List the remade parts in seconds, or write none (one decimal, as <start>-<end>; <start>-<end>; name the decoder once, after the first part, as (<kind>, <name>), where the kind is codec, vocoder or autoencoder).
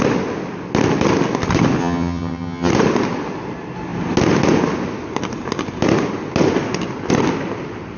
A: 1.8-2.7 (vocoder, HiFi-GAN)